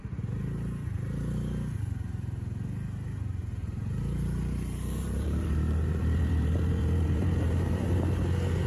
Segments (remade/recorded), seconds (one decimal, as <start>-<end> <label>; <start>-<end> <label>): 0.0-3.6 recorded; 3.6-8.2 remade; 8.2-8.7 recorded